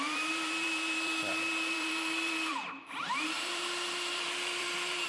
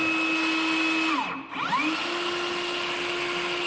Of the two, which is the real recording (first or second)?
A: second